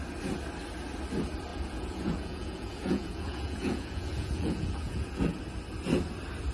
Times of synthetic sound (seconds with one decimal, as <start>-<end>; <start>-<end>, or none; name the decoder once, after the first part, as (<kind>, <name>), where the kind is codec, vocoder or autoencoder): 1.5-5.4 (vocoder, Vocos)